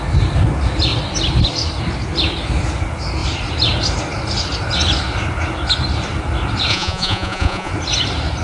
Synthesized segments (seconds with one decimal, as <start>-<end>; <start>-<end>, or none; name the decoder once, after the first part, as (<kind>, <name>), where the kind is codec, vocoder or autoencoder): 6.7-7.7 (vocoder, Vocos)